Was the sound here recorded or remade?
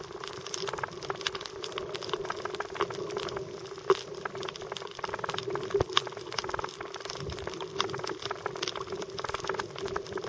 recorded